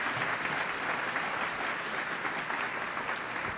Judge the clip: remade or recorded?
recorded